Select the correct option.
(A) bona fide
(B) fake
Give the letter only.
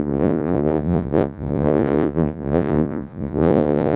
B